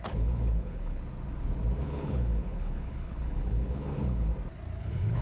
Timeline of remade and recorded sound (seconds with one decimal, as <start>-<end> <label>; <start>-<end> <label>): 0.0-1.0 remade; 1.0-1.8 recorded; 1.8-4.3 remade; 4.3-4.8 recorded; 4.8-5.2 remade